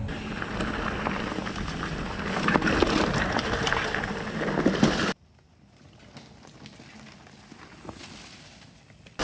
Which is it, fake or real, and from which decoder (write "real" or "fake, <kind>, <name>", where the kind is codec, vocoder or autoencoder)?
real